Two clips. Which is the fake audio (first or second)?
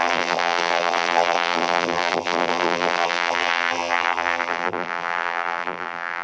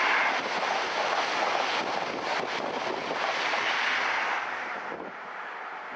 first